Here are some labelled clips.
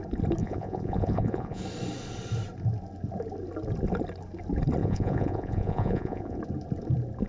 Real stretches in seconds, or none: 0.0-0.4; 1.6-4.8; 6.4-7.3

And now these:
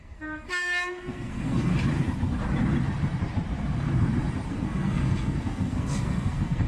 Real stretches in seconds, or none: 1.7-4.5

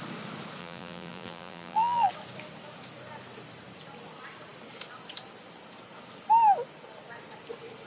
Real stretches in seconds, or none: 0.0-0.6; 2.1-7.9

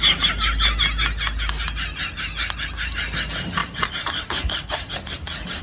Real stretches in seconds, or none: 0.0-3.6

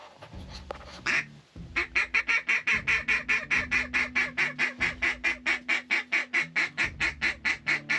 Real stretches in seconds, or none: 0.0-8.0

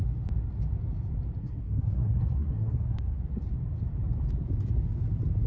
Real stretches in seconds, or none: 0.0-1.4; 3.2-5.5

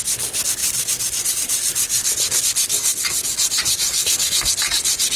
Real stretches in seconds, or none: 0.0-3.9; 4.5-5.2